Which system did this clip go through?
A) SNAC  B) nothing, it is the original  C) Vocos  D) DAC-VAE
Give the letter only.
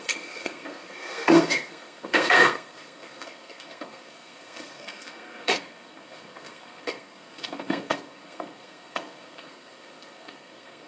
A